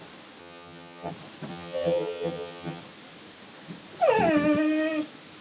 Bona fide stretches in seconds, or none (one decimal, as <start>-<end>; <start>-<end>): 0.0-0.4; 1.1-1.5; 2.8-5.4